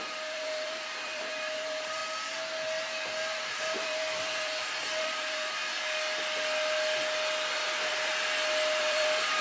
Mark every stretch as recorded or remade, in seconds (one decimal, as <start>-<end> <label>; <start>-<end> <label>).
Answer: 0.0-2.0 remade; 2.0-3.3 recorded; 3.3-5.6 remade; 5.6-7.6 recorded; 7.6-8.1 remade; 8.1-8.8 recorded; 8.8-9.4 remade